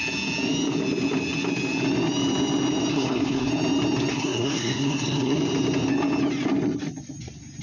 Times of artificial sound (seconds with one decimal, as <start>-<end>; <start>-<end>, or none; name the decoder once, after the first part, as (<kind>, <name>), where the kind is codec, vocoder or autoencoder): 2.9-3.5 (codec, SNAC); 4.1-5.4